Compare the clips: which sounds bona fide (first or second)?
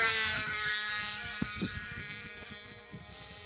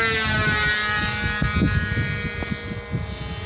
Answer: second